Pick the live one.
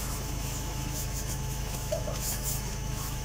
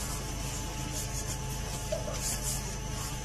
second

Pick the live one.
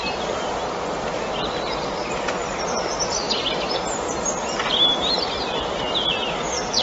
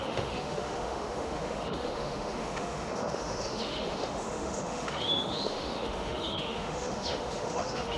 first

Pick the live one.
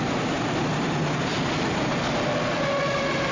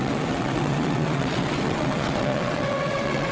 first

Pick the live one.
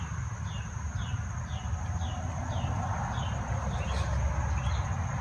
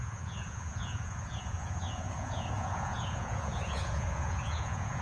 first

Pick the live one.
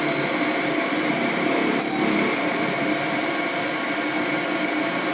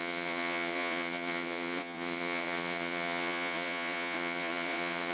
first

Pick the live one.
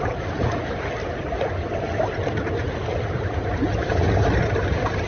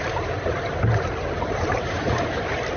first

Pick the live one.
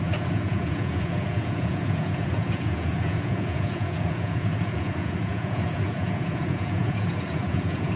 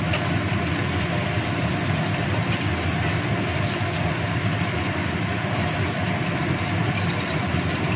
second